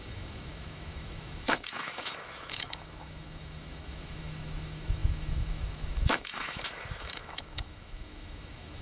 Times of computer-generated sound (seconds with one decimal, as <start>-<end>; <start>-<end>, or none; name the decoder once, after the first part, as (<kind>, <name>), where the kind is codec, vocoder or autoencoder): 0.0-8.8 (autoencoder, DAC-VAE)